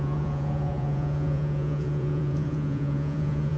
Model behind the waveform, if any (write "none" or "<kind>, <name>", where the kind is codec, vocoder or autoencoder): vocoder, Vocos